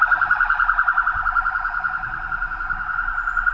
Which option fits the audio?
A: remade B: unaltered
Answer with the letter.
B